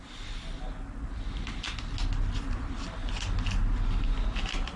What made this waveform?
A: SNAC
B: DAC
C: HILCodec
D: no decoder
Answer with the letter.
D